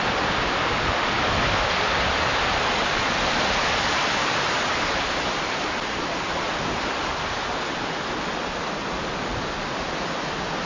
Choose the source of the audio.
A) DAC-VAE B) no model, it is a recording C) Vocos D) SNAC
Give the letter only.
B